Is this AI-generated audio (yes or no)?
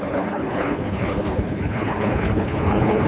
yes